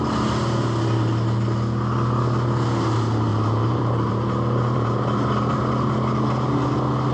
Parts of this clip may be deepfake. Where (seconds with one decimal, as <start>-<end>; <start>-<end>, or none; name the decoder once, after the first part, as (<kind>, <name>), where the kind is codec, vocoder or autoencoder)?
3.3-5.6 (vocoder, BigVGAN v2)